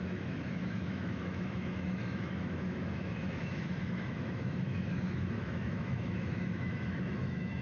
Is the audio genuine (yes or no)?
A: no